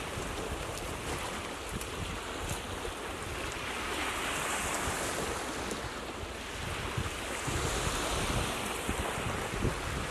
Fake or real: real